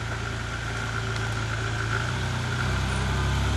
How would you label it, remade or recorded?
recorded